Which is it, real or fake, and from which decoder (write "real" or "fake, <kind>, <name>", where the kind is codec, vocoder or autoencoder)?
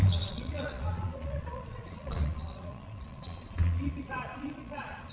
fake, vocoder, Vocos